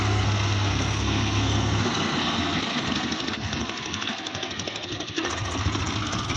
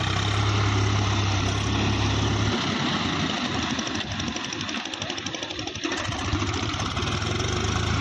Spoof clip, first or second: first